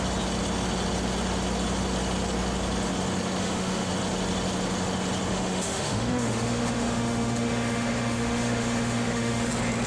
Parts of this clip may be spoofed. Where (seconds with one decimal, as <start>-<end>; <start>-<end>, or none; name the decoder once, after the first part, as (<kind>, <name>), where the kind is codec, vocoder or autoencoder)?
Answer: 3.4-3.9 (autoencoder, DAC-VAE); 5.3-9.5